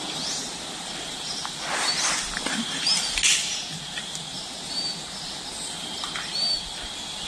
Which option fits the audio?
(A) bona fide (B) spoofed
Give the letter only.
A